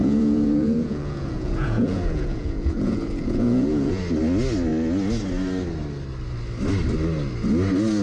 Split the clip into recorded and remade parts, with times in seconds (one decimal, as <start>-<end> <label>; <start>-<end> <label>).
0.0-4.0 remade; 4.0-8.0 recorded